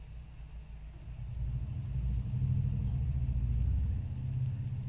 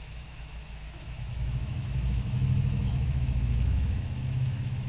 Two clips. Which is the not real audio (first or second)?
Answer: second